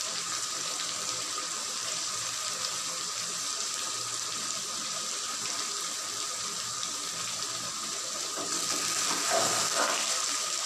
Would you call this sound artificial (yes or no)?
yes